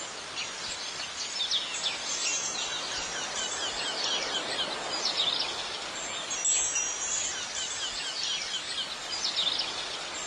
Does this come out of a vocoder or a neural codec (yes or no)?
no